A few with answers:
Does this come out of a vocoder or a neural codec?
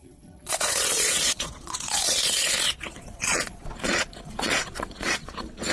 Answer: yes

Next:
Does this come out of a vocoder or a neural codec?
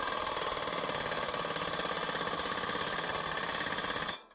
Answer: no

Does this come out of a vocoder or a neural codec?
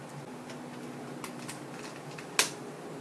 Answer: no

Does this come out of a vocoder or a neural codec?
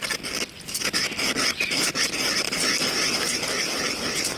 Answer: no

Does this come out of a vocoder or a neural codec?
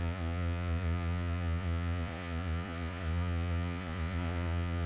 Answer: yes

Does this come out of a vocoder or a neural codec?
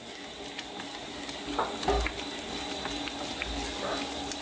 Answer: no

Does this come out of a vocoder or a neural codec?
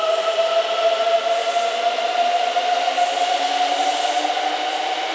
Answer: no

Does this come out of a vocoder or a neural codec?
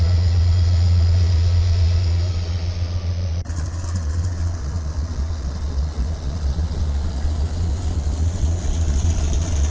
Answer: yes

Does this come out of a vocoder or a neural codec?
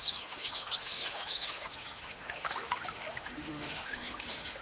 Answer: yes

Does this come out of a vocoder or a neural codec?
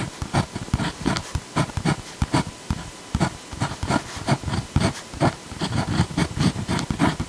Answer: no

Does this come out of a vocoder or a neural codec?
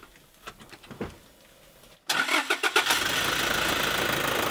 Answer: no